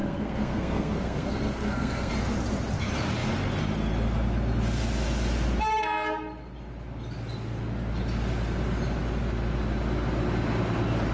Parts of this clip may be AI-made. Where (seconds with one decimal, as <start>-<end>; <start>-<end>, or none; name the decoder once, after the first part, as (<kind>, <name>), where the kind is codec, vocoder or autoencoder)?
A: 0.0-2.1 (codec, SNAC)